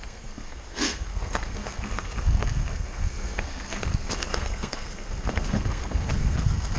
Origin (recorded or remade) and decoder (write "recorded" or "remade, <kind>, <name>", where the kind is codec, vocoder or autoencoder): remade, codec, SNAC